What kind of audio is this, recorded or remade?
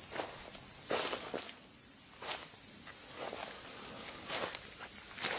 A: recorded